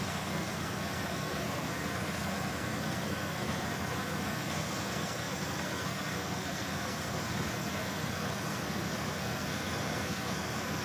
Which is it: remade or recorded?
remade